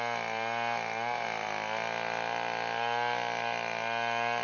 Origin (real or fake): real